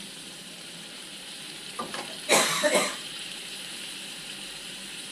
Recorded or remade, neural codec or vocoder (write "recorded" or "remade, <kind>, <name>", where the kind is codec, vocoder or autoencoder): remade, vocoder, BigVGAN v2